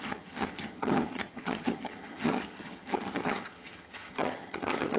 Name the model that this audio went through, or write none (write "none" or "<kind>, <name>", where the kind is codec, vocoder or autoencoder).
vocoder, HiFi-GAN